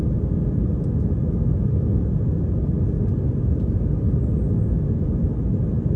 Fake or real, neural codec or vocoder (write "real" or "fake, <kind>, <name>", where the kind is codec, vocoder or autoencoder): real